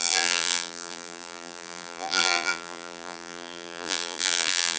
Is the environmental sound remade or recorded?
remade